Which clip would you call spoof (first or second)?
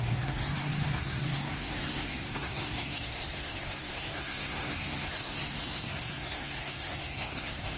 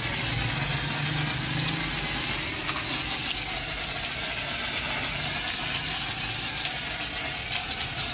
first